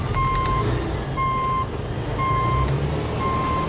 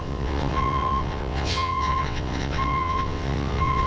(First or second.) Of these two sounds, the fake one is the second